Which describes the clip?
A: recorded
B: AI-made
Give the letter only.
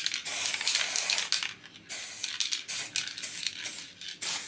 A